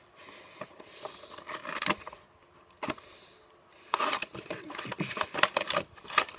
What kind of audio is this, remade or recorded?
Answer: recorded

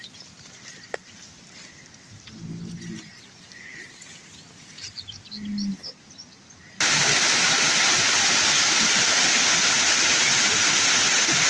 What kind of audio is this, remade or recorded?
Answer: recorded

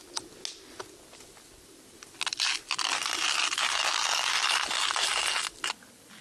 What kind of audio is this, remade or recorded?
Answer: recorded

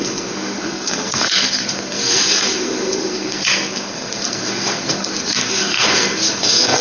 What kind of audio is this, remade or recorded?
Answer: remade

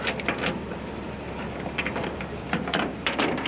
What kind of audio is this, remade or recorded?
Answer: recorded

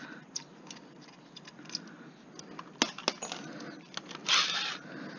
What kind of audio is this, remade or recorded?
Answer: recorded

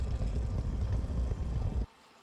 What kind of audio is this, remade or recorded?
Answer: recorded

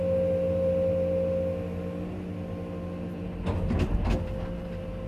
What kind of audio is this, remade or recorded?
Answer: recorded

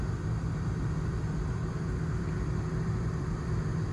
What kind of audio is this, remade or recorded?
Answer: remade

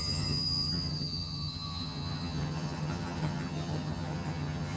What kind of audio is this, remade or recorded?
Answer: remade